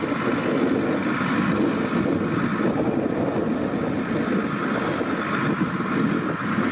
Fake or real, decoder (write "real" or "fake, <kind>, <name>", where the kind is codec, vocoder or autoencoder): real